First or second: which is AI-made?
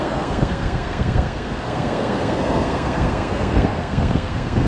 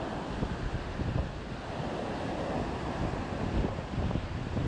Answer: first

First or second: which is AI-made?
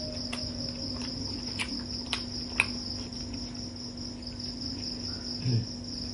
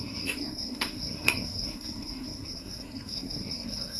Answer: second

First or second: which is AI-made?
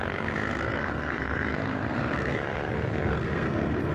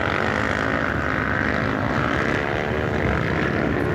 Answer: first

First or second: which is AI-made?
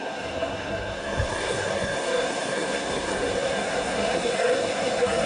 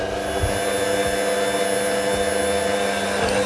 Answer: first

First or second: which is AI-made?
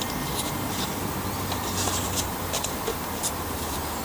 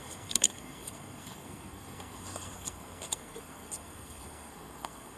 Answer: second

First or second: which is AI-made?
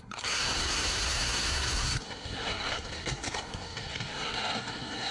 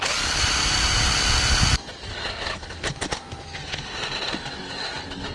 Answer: first